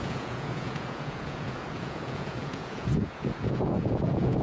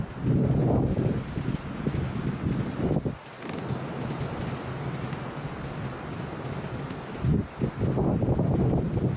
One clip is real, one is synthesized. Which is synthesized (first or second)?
first